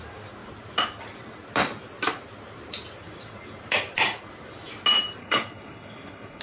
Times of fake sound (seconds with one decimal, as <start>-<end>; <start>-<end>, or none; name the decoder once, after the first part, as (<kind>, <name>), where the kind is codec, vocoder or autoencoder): 5.2-6.4 (codec, HILCodec)